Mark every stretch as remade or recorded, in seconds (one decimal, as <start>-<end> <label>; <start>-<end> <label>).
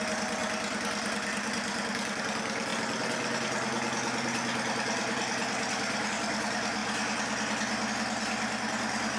0.0-2.7 remade; 2.7-6.1 recorded; 6.1-6.8 remade; 6.8-7.9 recorded; 7.9-9.2 remade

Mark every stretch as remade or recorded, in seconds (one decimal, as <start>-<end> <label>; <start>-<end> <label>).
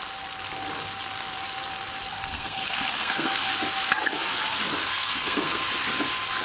0.0-2.1 recorded; 2.1-3.5 remade; 3.5-4.8 recorded; 4.8-5.7 remade; 5.7-6.4 recorded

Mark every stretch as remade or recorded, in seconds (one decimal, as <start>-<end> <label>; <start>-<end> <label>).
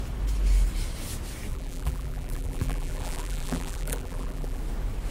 0.0-1.5 recorded; 1.5-4.6 remade; 4.6-5.1 recorded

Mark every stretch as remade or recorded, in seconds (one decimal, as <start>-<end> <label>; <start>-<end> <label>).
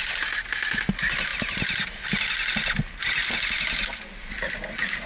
0.0-5.1 recorded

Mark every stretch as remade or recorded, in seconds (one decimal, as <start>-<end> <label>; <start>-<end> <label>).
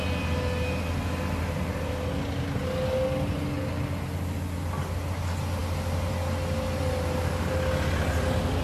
0.0-8.6 recorded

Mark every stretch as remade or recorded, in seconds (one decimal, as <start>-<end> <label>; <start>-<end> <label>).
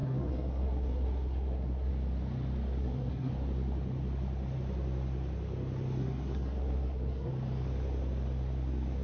0.0-1.9 remade; 1.9-2.8 recorded; 2.8-3.3 remade; 3.3-6.0 recorded; 6.0-7.3 remade; 7.3-9.0 recorded